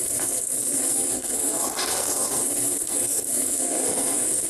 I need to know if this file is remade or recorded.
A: remade